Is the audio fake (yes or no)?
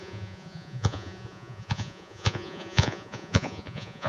yes